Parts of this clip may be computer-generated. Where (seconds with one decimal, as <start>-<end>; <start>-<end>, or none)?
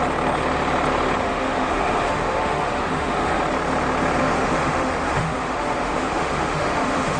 1.2-3.4; 4.2-7.2